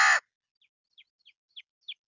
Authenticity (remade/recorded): recorded